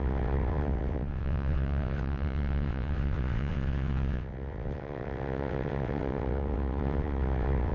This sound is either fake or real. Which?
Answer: fake